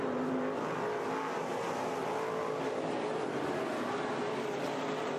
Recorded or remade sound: recorded